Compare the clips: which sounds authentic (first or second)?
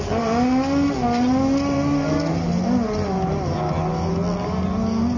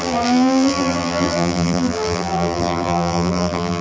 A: first